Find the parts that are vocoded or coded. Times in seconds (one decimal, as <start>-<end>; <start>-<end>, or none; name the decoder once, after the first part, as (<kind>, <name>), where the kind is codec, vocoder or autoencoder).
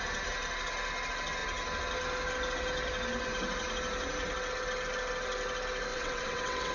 5.9-6.7 (vocoder, WaveNeXt)